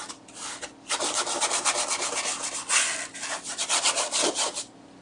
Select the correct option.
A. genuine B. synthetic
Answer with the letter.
B